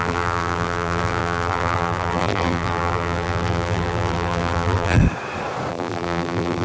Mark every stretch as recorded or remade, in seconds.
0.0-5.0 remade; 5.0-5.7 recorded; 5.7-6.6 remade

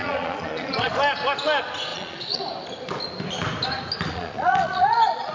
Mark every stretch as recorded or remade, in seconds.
0.0-0.9 remade; 0.9-1.9 recorded; 1.9-2.4 remade; 2.4-4.1 recorded; 4.1-5.3 remade

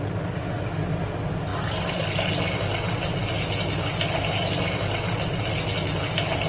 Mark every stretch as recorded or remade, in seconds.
0.0-6.5 recorded